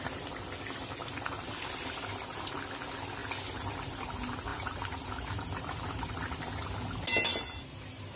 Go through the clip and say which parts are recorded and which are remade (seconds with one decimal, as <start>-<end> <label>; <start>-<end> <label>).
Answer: 0.0-4.5 recorded; 4.5-6.1 remade; 6.1-8.2 recorded